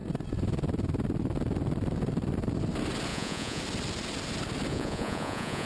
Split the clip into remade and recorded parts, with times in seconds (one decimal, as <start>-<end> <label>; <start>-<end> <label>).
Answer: 0.0-3.1 recorded; 3.1-3.6 remade; 3.6-4.7 recorded; 4.7-5.7 remade